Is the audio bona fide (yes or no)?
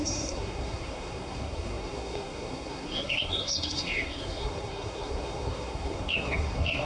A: no